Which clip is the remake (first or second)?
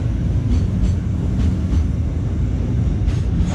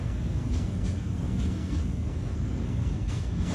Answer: second